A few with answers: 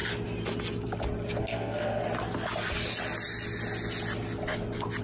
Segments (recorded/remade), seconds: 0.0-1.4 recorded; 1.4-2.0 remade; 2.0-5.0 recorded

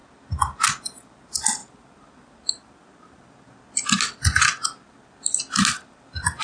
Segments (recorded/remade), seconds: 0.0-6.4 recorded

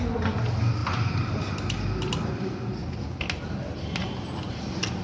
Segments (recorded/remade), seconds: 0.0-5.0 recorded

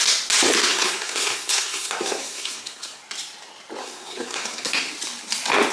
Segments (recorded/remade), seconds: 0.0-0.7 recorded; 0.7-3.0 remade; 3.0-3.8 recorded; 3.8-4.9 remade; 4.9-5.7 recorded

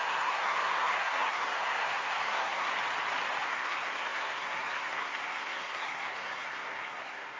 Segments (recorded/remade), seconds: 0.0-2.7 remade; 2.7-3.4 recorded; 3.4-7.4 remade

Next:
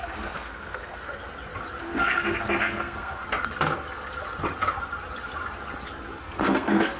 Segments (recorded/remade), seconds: 0.0-1.1 remade; 1.1-1.8 recorded; 1.8-3.2 remade; 3.2-6.2 recorded; 6.2-7.0 remade

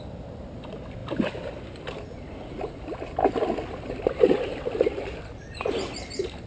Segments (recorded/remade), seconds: 0.0-6.5 recorded